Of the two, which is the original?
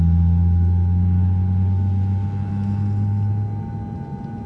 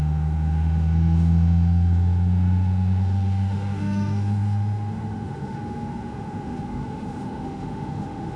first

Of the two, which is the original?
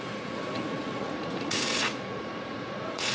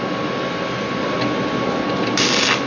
second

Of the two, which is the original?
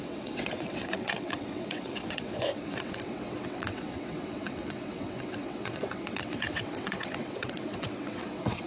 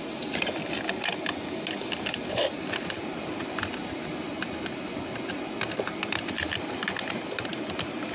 second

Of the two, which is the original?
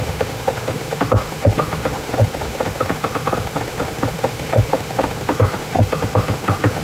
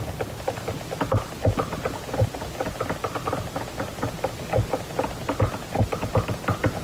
second